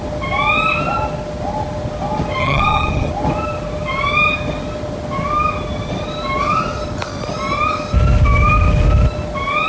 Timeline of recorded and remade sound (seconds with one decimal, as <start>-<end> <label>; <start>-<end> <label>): 0.0-2.4 recorded; 2.4-3.1 remade; 3.1-9.7 recorded